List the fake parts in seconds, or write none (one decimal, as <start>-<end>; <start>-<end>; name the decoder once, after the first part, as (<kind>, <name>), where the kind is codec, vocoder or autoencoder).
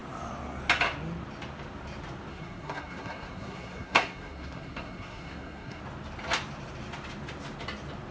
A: 2.3-5.8 (codec, SNAC)